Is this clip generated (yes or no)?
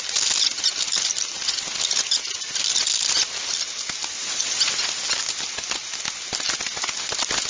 no